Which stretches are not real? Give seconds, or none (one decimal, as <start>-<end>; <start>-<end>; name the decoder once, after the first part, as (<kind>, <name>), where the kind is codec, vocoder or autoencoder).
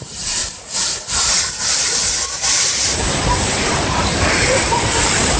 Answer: 0.0-0.4 (vocoder, BigVGAN v2); 3.6-4.1